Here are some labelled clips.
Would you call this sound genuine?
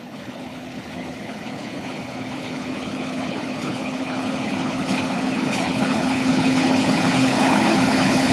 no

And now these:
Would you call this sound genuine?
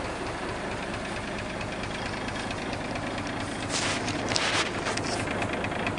yes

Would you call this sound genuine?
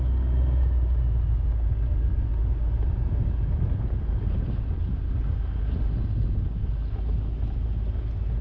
yes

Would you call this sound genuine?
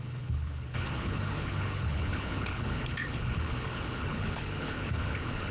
no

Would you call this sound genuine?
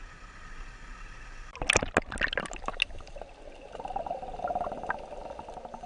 yes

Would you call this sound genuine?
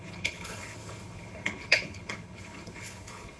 no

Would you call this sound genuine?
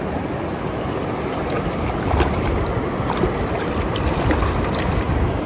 yes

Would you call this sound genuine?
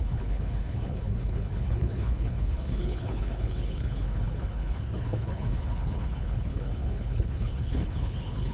no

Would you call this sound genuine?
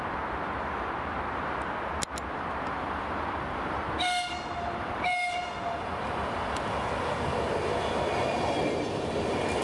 yes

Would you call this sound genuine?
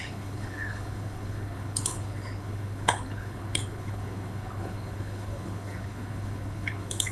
no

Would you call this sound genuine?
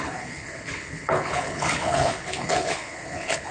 no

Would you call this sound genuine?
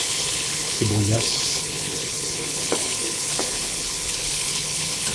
no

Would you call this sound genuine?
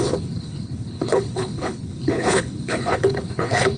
no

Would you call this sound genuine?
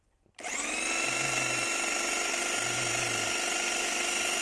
yes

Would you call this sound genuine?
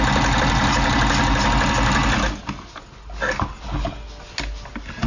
yes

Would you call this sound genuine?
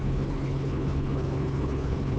no